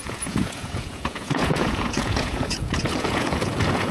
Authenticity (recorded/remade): remade